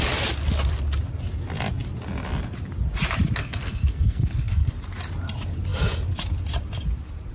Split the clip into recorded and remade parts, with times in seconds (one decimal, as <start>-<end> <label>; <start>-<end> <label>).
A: 0.0-3.4 recorded; 3.4-4.7 remade; 4.7-7.3 recorded